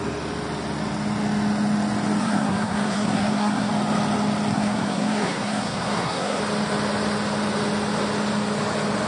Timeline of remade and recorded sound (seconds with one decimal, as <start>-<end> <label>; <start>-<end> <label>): 0.0-2.2 recorded; 2.2-3.7 remade; 3.7-4.5 recorded; 4.5-6.4 remade; 6.4-9.1 recorded